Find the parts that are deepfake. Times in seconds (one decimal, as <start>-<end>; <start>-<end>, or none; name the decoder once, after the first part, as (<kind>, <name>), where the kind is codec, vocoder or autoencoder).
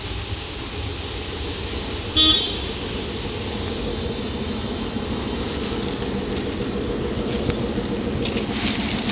3.9-5.4 (autoencoder, DAC-VAE)